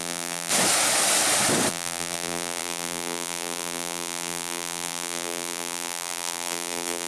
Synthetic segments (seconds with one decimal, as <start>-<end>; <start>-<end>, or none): 0.0-0.5; 1.7-7.1